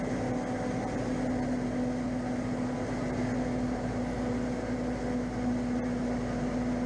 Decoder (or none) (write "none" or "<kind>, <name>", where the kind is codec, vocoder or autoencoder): none